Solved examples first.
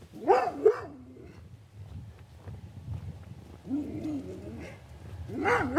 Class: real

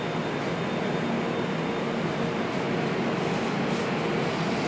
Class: real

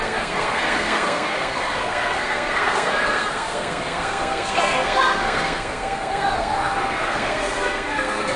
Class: fake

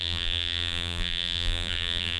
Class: fake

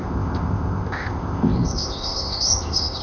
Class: fake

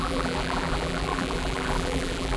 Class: fake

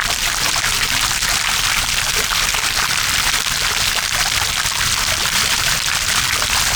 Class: fake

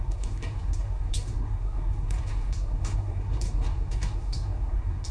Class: fake